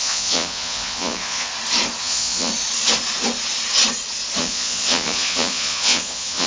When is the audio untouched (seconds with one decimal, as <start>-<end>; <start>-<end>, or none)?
1.5-2.0; 2.5-4.4